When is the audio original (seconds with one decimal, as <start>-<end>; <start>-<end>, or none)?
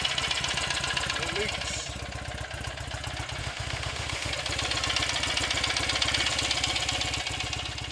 0.0-3.4; 4.3-7.9